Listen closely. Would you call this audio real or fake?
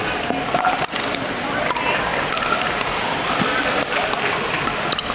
fake